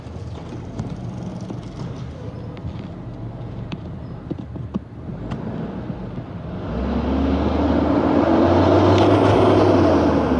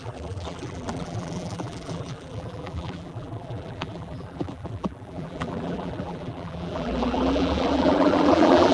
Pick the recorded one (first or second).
first